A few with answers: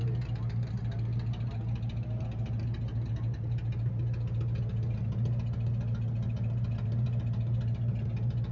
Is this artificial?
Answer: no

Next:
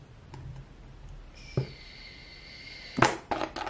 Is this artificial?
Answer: no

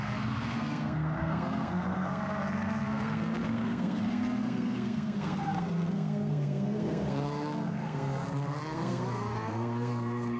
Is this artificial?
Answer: yes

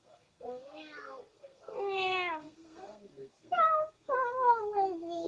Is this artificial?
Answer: yes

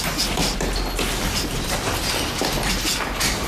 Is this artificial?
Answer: no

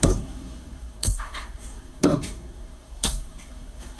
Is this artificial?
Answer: yes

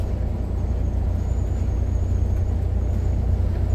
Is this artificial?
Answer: no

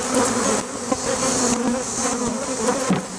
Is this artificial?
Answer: no